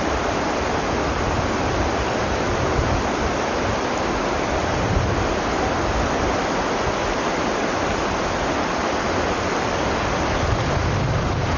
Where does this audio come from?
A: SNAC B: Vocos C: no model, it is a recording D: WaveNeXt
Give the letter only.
C